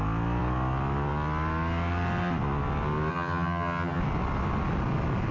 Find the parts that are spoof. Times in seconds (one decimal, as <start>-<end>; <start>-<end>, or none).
3.1-4.0